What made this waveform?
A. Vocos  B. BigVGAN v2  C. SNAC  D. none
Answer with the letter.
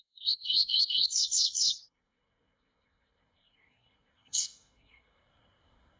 C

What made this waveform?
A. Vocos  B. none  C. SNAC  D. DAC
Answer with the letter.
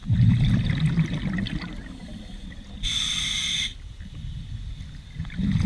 B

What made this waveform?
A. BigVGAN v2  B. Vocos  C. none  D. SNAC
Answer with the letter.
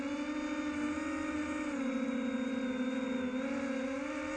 C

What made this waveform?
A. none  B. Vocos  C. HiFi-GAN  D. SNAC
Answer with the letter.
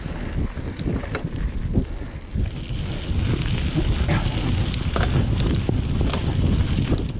A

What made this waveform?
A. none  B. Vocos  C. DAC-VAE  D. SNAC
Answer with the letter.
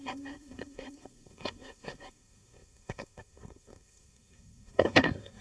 D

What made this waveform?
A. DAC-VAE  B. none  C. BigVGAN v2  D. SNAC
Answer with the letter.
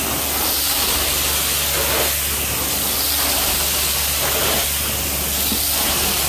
B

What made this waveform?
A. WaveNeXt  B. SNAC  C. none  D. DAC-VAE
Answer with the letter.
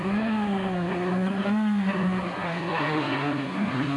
B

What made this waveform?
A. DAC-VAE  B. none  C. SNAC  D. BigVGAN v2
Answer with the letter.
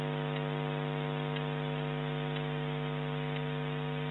B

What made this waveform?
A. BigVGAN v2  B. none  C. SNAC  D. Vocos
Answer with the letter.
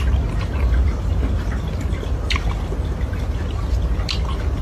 B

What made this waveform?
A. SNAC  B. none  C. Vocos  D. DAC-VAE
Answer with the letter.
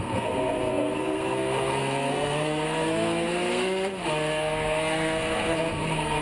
A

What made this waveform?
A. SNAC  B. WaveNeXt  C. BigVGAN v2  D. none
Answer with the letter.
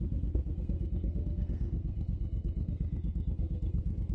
A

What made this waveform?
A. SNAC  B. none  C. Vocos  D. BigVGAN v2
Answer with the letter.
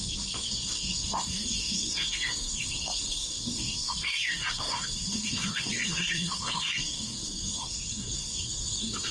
A